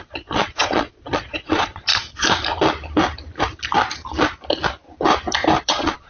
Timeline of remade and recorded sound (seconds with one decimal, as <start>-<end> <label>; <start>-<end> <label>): 0.0-1.9 remade; 1.9-5.6 recorded; 5.6-6.1 remade